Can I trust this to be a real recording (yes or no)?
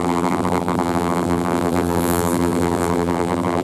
no